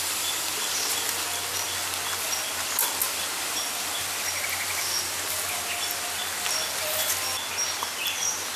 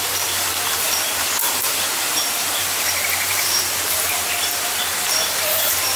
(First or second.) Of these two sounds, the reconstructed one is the second